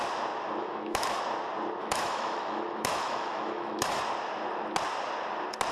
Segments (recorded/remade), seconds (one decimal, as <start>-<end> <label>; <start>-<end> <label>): 0.0-0.6 recorded; 0.6-1.2 remade; 1.2-1.8 recorded; 1.8-4.0 remade; 4.0-5.7 recorded